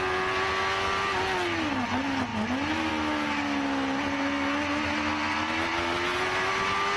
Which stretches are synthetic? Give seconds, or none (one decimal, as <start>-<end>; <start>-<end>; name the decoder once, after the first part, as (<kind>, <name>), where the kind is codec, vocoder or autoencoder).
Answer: none

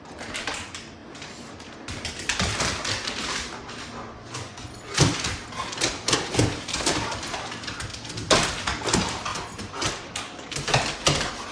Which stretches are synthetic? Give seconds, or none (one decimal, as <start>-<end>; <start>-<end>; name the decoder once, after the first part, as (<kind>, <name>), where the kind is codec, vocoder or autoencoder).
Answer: 4.1-4.7 (vocoder, Vocos)

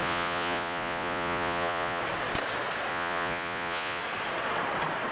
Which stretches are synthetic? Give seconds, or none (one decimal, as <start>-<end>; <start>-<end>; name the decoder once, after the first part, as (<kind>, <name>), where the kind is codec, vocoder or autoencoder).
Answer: 0.0-2.0 (vocoder, Vocos); 2.9-4.0

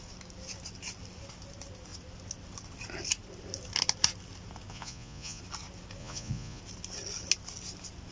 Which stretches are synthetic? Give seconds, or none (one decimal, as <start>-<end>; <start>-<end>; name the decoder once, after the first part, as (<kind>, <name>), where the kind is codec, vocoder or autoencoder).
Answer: 4.7-5.4 (vocoder, Vocos); 6.0-6.6

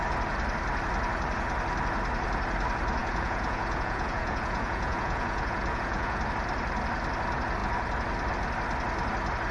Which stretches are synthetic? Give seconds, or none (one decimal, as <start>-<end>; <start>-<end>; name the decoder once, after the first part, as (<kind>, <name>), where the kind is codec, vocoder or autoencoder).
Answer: 3.0-6.2 (vocoder, Vocos)

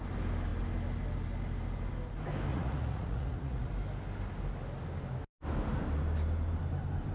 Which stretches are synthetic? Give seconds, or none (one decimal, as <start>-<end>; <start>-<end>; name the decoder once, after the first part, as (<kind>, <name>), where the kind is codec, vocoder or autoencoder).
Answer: 2.5-3.7 (vocoder, Vocos)

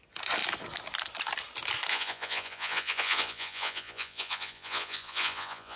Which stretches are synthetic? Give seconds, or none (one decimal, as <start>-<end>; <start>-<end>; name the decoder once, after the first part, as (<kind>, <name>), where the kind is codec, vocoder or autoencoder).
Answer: 1.9-5.8 (vocoder, Vocos)